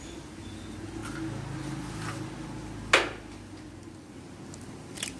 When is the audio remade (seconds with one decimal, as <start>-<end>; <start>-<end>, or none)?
none